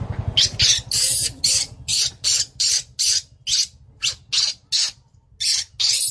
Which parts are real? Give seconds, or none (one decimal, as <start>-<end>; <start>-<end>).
0.0-6.1